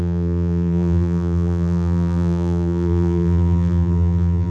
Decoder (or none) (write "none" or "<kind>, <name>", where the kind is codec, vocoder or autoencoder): vocoder, BigVGAN v2